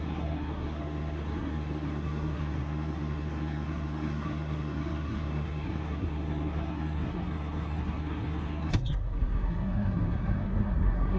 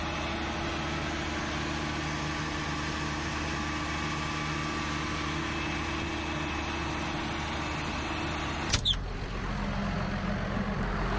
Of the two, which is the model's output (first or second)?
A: first